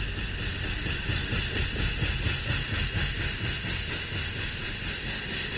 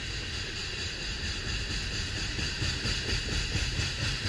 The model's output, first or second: second